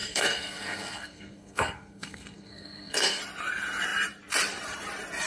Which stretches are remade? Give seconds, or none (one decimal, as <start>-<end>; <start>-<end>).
0.0-3.2